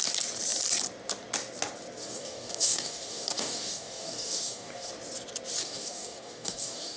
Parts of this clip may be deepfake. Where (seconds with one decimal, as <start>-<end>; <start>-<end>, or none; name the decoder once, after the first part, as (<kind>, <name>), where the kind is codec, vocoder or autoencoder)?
2.0-4.9 (codec, DAC); 5.6-7.0